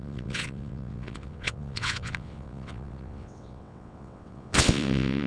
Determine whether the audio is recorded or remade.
remade